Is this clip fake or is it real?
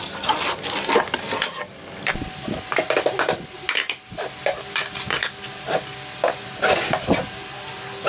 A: real